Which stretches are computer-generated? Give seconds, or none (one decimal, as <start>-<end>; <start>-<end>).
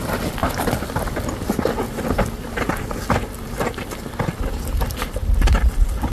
none